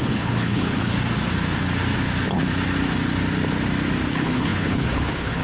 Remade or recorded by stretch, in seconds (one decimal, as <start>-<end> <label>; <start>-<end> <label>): 0.0-0.9 remade; 0.9-4.1 recorded; 4.1-5.4 remade